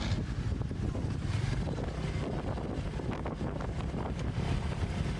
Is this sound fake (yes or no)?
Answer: no